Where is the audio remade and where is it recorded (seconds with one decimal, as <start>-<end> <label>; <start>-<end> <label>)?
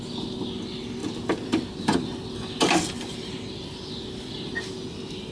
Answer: 0.0-5.3 recorded